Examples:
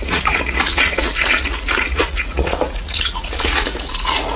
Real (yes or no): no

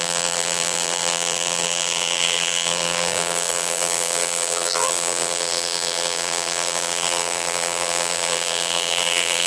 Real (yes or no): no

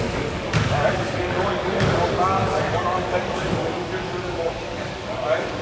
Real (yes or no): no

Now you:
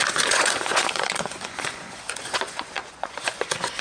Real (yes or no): no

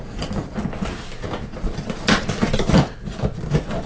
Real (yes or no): yes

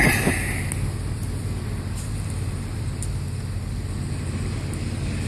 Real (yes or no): yes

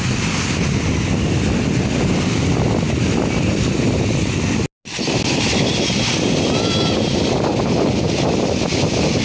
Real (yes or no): yes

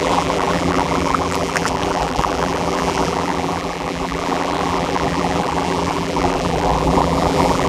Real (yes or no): no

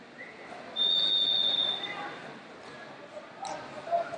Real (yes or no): yes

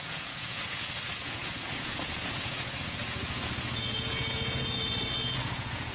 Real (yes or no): no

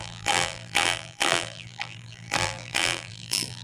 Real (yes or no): no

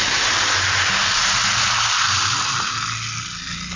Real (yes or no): yes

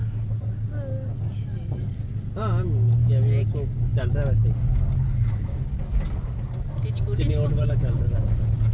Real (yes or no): yes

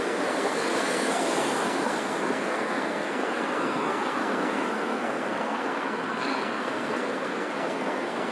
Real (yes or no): no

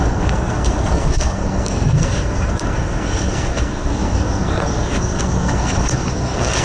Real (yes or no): no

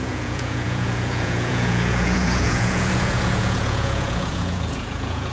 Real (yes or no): no